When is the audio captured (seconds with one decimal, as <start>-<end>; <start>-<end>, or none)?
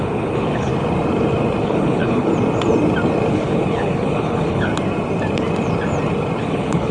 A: 0.7-1.6; 2.3-3.3; 4.7-6.4